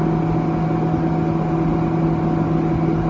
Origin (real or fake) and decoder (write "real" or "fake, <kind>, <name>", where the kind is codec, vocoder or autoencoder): real